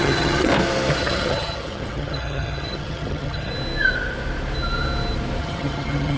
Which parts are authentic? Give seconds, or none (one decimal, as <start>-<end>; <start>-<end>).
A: 0.5-1.0; 3.5-5.4